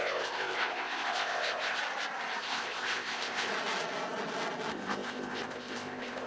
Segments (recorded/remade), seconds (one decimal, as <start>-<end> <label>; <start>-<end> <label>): 0.0-1.8 remade; 1.8-2.4 recorded; 2.4-3.5 remade; 3.5-4.7 recorded; 4.7-6.3 remade